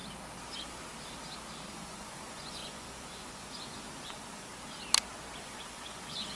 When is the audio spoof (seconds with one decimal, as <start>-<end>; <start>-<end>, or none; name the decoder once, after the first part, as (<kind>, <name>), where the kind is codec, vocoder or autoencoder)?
1.7-4.5 (vocoder, Vocos); 5.4-6.4